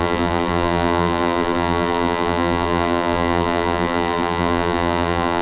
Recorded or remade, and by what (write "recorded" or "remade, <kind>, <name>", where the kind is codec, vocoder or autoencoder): remade, vocoder, BigVGAN v2